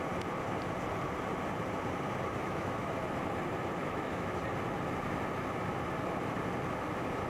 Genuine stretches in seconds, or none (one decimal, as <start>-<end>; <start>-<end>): 0.0-2.4; 2.9-3.8; 4.4-7.3